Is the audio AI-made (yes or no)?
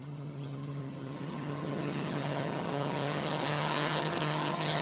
yes